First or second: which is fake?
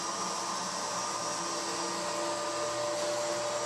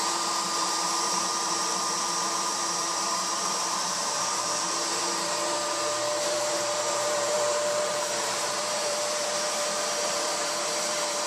second